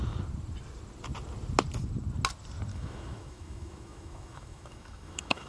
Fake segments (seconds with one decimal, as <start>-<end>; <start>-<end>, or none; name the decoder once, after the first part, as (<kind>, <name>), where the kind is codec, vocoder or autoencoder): 2.7-5.5 (autoencoder, DAC-VAE)